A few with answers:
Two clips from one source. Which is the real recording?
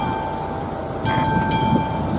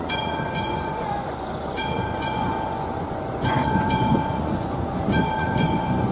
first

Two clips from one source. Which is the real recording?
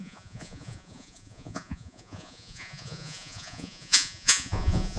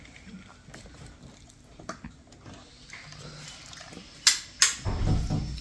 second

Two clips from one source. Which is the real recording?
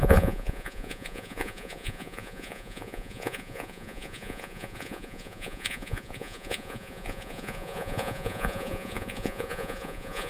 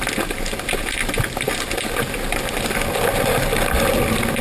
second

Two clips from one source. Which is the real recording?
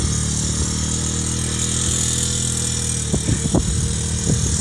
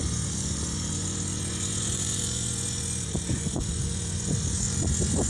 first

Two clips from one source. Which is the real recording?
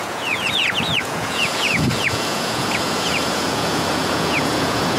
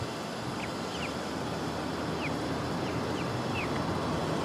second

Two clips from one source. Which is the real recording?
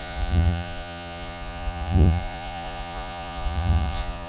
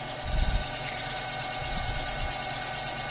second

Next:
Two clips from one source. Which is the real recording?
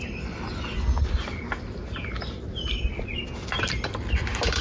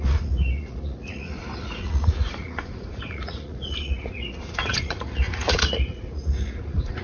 first